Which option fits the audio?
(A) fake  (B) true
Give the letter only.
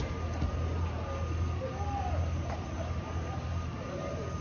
B